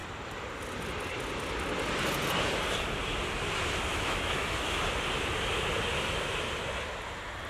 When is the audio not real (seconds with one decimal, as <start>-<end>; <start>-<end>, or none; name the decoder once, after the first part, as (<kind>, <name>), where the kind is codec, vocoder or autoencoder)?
3.9-4.8 (autoencoder, DAC-VAE)